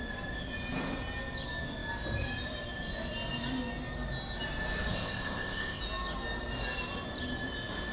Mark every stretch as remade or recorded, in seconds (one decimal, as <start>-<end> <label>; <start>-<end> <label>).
0.0-4.9 recorded; 4.9-5.8 remade; 5.8-7.9 recorded